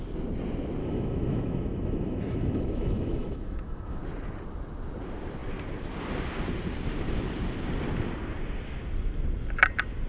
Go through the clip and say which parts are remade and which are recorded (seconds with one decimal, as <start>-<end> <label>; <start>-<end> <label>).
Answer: 0.0-0.8 recorded; 0.8-4.0 remade; 4.0-10.1 recorded